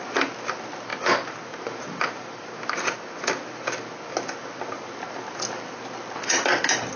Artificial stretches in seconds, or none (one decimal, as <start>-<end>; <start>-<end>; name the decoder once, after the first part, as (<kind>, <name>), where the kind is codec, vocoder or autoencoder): none